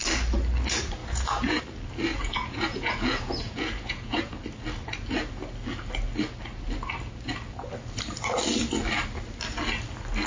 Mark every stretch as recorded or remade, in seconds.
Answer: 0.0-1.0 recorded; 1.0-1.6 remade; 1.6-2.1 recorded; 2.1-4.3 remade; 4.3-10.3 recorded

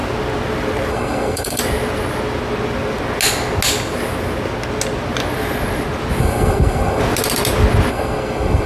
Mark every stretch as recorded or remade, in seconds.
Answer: 0.0-0.9 recorded; 0.9-1.6 remade; 1.6-6.2 recorded; 6.2-7.0 remade; 7.0-7.9 recorded; 7.9-8.7 remade

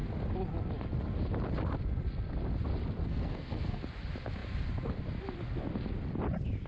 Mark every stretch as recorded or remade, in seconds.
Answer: 0.0-3.0 recorded; 3.0-3.8 remade; 3.8-6.7 recorded

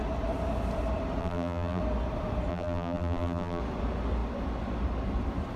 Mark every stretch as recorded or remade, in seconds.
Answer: 0.0-1.2 recorded; 1.2-1.8 remade; 1.8-2.5 recorded; 2.5-3.6 remade; 3.6-5.6 recorded

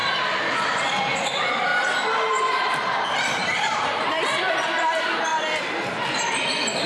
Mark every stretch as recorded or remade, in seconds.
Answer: 0.0-0.5 recorded; 0.5-1.7 remade; 1.7-2.3 recorded; 2.3-5.3 remade; 5.3-6.4 recorded; 6.4-6.9 remade

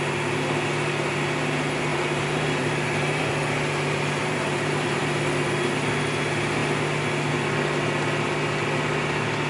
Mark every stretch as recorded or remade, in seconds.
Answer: 0.0-1.9 recorded; 1.9-3.3 remade; 3.3-4.2 recorded; 4.2-5.0 remade; 5.0-9.5 recorded

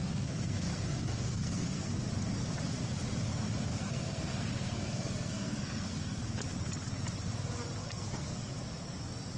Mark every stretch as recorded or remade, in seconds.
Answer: 0.0-2.0 remade; 2.0-3.7 recorded; 3.7-6.2 remade; 6.2-7.8 recorded; 7.8-8.5 remade; 8.5-9.4 recorded

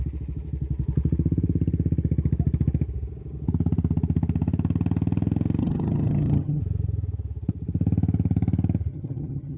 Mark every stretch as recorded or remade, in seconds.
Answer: 0.0-5.6 recorded; 5.6-6.6 remade; 6.6-8.9 recorded; 8.9-9.6 remade